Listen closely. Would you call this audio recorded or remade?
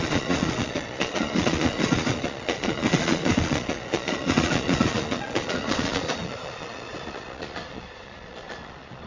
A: remade